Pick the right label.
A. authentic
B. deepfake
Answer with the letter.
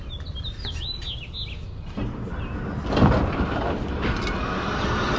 A